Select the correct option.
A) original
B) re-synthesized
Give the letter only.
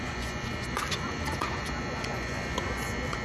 B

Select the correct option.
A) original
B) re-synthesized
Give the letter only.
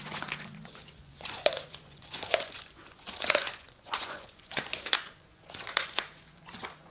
B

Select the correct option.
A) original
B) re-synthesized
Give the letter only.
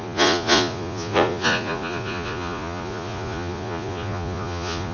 B